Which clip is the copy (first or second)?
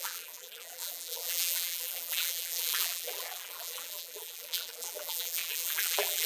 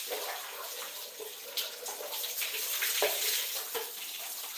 first